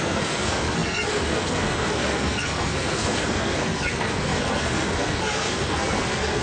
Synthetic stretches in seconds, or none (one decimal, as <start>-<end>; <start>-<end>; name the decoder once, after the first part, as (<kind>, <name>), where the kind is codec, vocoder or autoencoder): 0.0-6.4 (codec, SNAC)